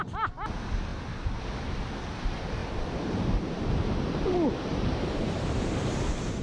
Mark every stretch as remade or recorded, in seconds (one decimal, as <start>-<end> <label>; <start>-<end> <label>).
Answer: 0.0-0.9 recorded; 0.9-1.4 remade; 1.4-2.6 recorded; 2.6-3.6 remade; 3.6-4.7 recorded; 4.7-6.0 remade; 6.0-6.4 recorded